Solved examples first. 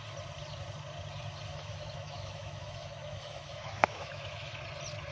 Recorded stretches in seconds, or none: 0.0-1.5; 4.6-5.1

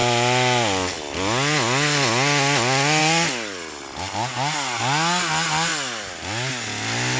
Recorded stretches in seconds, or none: 0.0-7.2

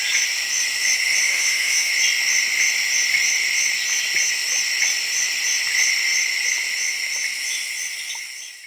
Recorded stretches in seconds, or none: 0.0-1.3; 1.9-8.7

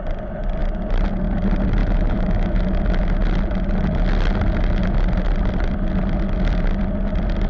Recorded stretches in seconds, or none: 0.0-1.8; 3.0-7.5

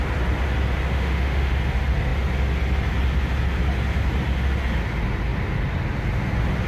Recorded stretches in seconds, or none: 0.0-0.9; 1.6-6.7